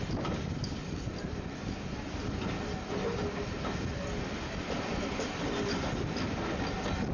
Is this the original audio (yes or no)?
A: yes